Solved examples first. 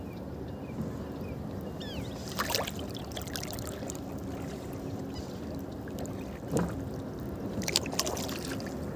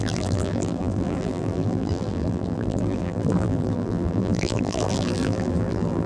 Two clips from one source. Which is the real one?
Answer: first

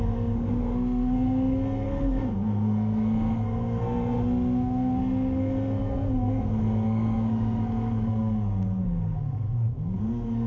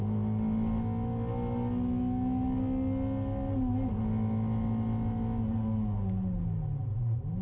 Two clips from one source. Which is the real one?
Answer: second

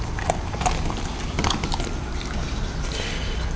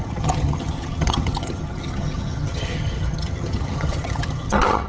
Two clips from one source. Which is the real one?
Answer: first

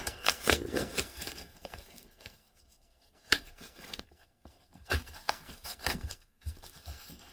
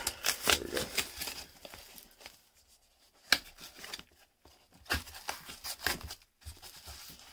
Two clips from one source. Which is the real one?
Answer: second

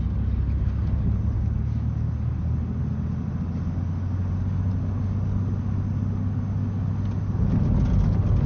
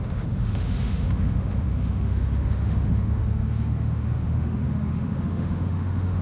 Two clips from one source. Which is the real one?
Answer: first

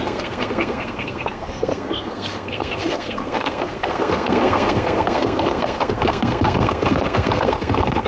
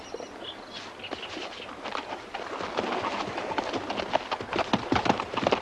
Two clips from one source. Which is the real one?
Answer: second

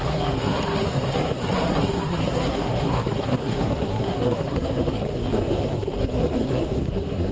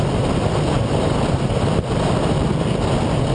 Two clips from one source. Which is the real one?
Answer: second